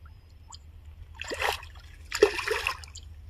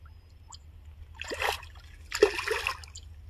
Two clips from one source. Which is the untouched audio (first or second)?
second